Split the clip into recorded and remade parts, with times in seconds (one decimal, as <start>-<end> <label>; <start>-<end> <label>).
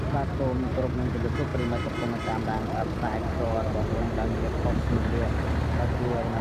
0.0-6.4 recorded